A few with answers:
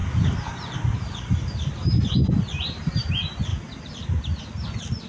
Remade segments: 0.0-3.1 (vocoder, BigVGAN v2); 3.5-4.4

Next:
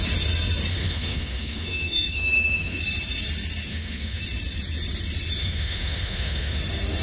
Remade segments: 0.7-2.8 (autoencoder, DAC-VAE); 3.7-4.2; 5.4-6.6